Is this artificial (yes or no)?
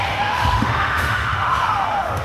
yes